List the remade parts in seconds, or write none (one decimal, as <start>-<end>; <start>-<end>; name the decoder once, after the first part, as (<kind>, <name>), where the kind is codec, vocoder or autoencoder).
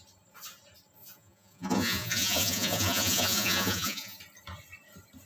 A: 1.0-4.2 (vocoder, Vocos)